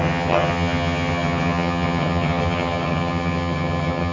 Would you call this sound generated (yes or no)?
yes